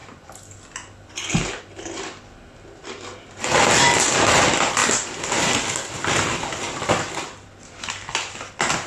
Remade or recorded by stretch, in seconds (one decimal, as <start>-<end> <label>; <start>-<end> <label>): 0.0-2.4 remade; 2.4-4.8 recorded; 4.8-8.9 remade